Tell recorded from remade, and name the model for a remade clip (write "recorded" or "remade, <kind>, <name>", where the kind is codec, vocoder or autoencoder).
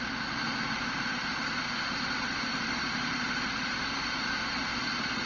recorded